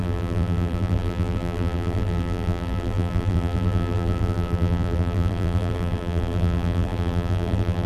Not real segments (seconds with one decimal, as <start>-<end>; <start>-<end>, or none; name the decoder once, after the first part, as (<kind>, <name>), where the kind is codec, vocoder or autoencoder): 0.0-7.9 (vocoder, BigVGAN v2)